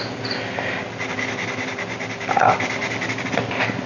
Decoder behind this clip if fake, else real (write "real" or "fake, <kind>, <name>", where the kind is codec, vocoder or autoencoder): real